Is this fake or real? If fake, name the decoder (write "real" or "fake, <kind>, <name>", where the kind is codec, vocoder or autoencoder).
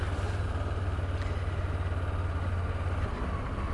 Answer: real